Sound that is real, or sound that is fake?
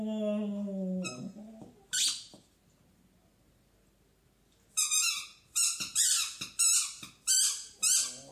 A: real